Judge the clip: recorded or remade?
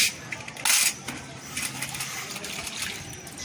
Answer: recorded